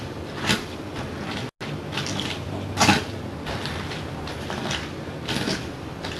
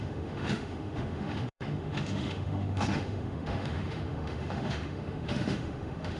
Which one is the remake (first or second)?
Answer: second